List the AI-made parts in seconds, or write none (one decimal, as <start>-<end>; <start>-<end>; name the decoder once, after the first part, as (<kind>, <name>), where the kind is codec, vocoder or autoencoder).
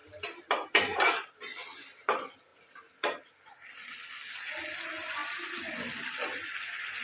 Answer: 0.0-1.3 (vocoder, BigVGAN v2); 2.5-4.3; 5.2-6.3